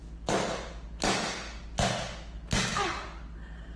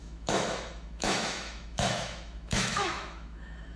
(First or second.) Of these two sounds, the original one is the first